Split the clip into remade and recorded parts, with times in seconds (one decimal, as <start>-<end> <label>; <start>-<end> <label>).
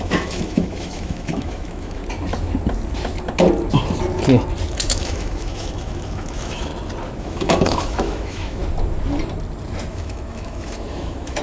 0.0-2.0 remade; 2.0-4.7 recorded; 4.7-6.7 remade; 6.7-7.2 recorded; 7.2-8.6 remade; 8.6-9.9 recorded; 9.9-11.4 remade